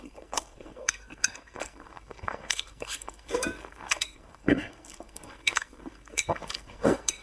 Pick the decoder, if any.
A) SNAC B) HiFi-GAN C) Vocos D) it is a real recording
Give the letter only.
A